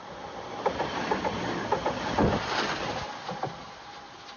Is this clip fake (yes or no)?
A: no